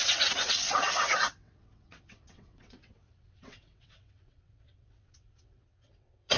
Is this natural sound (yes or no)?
no